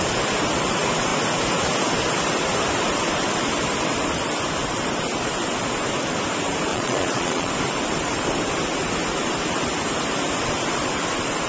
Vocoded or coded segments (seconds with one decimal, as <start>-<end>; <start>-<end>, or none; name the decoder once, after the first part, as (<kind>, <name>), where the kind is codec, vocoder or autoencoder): 6.7-7.5 (vocoder, Vocos)

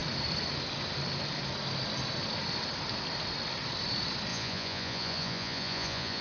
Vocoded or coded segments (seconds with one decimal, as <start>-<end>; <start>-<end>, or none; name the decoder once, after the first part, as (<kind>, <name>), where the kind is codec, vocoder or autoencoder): 4.3-6.2 (vocoder, Vocos)

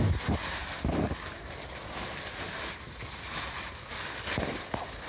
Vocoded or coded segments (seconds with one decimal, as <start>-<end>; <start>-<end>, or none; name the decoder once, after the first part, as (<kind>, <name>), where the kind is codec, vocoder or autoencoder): none